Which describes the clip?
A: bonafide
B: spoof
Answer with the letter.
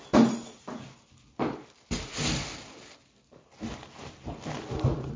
A